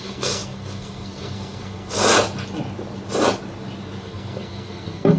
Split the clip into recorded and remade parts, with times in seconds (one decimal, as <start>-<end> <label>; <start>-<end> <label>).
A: 0.0-2.0 remade; 2.0-4.0 recorded; 4.0-5.2 remade